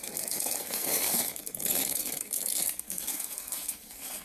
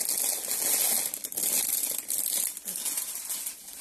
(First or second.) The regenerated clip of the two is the first